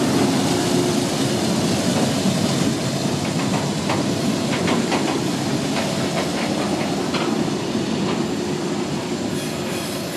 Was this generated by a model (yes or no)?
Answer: no